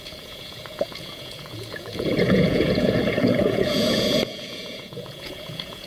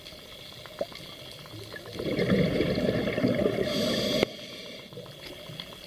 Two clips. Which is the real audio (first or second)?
second